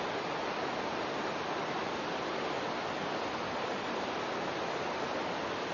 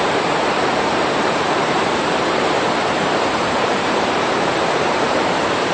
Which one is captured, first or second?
first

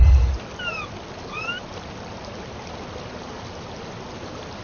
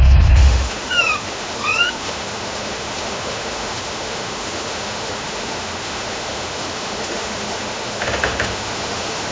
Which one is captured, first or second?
first